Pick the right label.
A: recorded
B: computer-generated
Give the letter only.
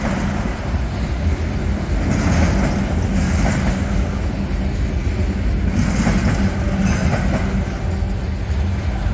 A